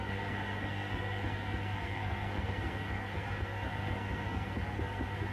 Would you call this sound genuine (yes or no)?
no